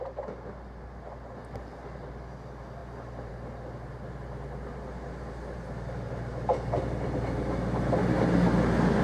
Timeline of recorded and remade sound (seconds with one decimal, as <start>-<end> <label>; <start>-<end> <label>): 0.0-9.0 recorded

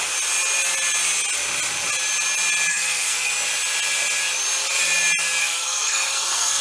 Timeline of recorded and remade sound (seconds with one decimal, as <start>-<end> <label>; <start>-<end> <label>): 0.0-2.7 recorded; 2.7-3.3 remade; 3.3-5.4 recorded; 5.4-6.6 remade

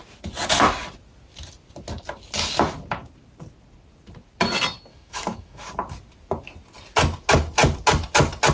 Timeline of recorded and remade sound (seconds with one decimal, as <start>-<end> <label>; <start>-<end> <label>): 0.0-4.9 recorded; 4.9-5.7 remade; 5.7-8.5 recorded

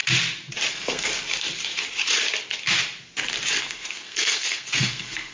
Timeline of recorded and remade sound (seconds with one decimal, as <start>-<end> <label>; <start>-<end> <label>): 0.0-0.7 recorded; 0.7-1.1 remade; 1.1-3.6 recorded; 3.6-5.3 remade

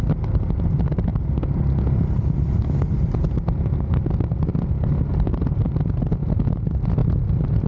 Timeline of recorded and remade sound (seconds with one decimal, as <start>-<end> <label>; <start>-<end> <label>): 0.0-7.7 recorded

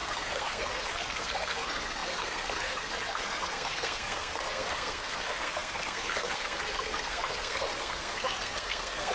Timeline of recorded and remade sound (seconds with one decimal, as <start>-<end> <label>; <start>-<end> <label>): 0.0-9.1 remade